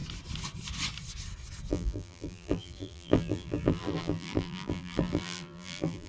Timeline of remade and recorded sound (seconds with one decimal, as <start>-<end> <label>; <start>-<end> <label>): 0.0-1.7 recorded; 1.7-6.1 remade